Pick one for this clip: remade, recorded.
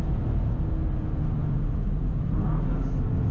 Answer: recorded